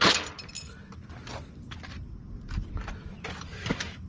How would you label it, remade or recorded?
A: recorded